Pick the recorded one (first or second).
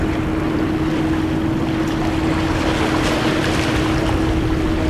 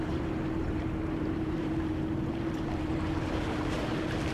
first